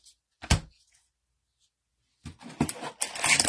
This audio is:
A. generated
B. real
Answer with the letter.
B